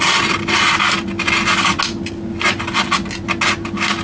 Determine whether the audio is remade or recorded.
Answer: recorded